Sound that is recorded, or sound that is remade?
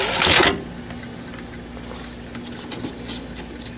recorded